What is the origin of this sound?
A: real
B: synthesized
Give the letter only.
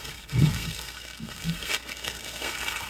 B